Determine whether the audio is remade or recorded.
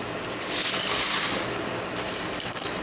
recorded